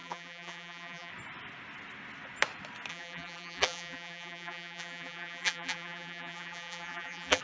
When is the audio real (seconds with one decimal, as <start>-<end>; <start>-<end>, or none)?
1.1-2.9